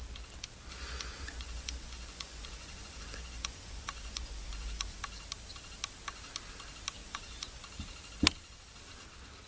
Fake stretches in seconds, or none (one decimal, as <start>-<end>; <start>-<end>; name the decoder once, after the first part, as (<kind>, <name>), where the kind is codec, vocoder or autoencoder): 0.8-5.0 (vocoder, Vocos); 7.0-7.6